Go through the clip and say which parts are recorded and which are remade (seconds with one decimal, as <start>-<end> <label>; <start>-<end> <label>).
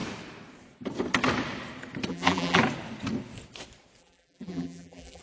0.0-2.1 recorded; 2.1-2.6 remade; 2.6-4.0 recorded; 4.0-5.2 remade